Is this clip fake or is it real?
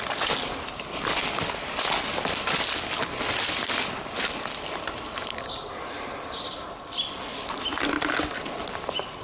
real